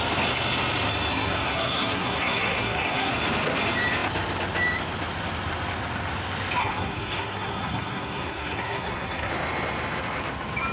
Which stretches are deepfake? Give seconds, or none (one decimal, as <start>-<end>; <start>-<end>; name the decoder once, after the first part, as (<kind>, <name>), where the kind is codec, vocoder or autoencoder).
1.1-3.1 (codec, SNAC); 6.6-9.3